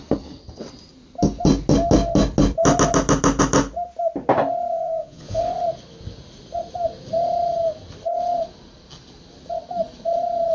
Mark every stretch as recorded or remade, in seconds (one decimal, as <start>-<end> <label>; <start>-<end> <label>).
0.0-4.7 recorded; 4.7-5.4 remade; 5.4-10.5 recorded